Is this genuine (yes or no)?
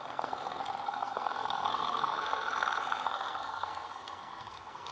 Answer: no